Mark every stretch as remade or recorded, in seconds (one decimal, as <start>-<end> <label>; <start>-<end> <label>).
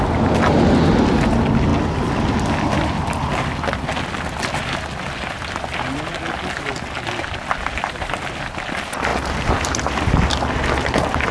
0.0-9.1 recorded; 9.1-10.3 remade; 10.3-11.3 recorded